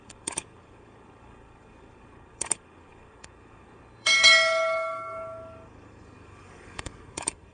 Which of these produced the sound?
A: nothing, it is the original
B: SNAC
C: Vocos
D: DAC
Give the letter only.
D